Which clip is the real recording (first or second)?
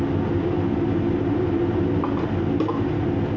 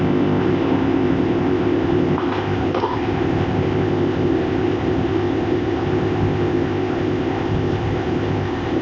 first